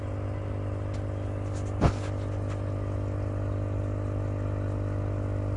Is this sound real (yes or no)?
yes